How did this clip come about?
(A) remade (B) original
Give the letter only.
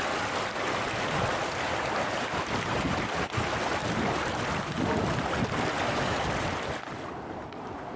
B